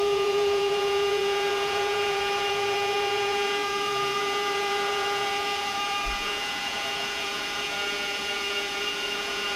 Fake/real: fake